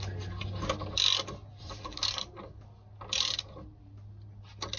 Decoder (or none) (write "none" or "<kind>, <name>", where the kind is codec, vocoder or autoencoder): none